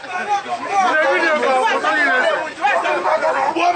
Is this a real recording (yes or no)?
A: yes